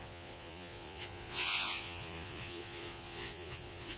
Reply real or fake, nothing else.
fake